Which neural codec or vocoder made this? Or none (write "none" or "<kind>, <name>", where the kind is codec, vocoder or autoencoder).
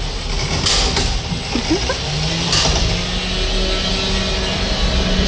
none